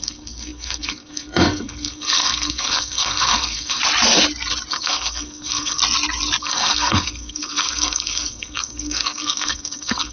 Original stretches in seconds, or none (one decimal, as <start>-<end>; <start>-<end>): 3.8-4.7; 5.8-6.4